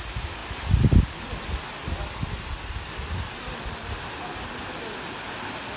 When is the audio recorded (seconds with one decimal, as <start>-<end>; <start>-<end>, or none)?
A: 0.0-5.8